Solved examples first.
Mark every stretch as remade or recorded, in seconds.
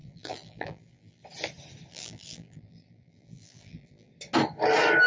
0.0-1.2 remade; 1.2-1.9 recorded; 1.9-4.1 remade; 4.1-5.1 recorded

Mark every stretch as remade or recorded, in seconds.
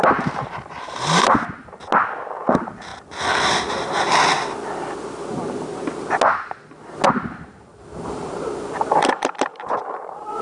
0.0-1.8 remade; 1.8-2.4 recorded; 2.4-2.9 remade; 2.9-7.1 recorded; 7.1-10.4 remade